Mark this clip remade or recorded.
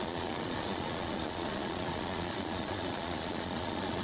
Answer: remade